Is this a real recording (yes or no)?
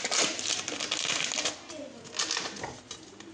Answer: yes